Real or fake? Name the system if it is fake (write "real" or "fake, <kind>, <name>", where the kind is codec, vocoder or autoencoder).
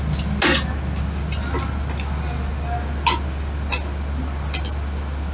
real